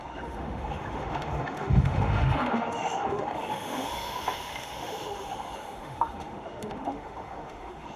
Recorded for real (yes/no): no